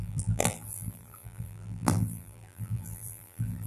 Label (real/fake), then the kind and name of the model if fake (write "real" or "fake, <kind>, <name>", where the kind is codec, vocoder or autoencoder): fake, vocoder, BigVGAN v2